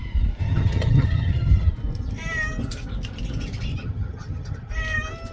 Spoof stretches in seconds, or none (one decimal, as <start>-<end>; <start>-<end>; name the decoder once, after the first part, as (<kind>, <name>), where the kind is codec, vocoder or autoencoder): 0.4-1.7 (vocoder, HiFi-GAN); 3.7-4.7